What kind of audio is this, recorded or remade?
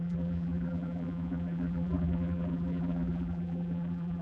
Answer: remade